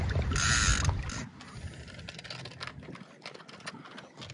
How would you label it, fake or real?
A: real